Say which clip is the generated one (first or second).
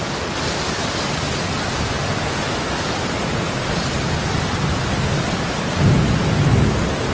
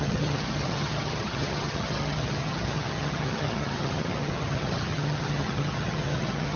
second